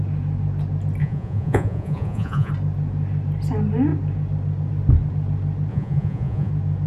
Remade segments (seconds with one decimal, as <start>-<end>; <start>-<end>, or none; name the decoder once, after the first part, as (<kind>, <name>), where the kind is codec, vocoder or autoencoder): 1.0-2.5 (vocoder, Vocos); 5.7-6.5